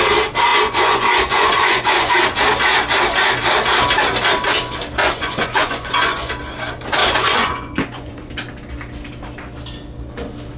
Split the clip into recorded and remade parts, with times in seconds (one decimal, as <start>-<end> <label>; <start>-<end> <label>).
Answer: 0.0-0.5 recorded; 0.5-2.1 remade; 2.1-5.0 recorded; 5.0-6.3 remade; 6.3-7.0 recorded; 7.0-8.3 remade; 8.3-10.6 recorded